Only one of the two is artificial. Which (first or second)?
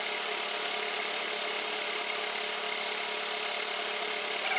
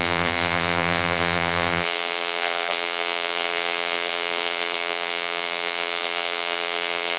second